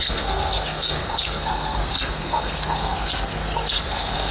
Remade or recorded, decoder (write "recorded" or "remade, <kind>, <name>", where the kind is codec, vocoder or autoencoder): remade, codec, SNAC